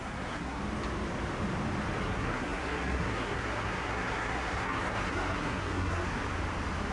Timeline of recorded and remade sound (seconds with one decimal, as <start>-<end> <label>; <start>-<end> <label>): 0.0-0.6 remade; 0.6-2.0 recorded; 2.0-6.2 remade; 6.2-6.9 recorded